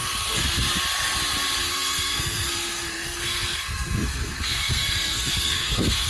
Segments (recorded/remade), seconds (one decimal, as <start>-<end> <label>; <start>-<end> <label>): 0.0-0.4 remade; 0.4-1.6 recorded; 1.6-6.1 remade

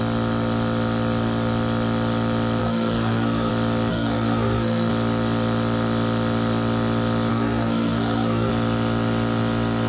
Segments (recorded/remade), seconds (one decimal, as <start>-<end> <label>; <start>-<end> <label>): 0.0-2.6 recorded; 2.6-3.5 remade; 3.5-3.9 recorded; 3.9-4.9 remade; 4.9-7.3 recorded; 7.3-8.5 remade; 8.5-9.9 recorded

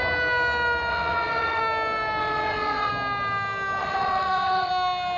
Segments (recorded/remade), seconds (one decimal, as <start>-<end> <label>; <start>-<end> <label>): 0.0-0.9 recorded; 0.9-1.6 remade; 1.6-2.2 recorded; 2.2-2.9 remade; 2.9-3.8 recorded; 3.8-4.7 remade; 4.7-5.2 recorded